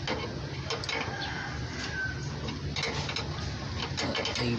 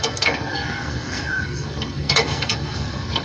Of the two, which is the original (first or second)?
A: first